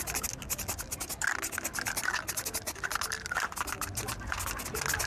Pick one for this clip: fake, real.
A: real